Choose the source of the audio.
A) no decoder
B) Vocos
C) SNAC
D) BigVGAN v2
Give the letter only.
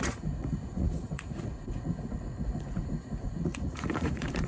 B